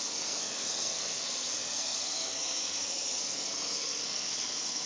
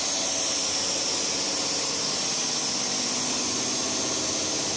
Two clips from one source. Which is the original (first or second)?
second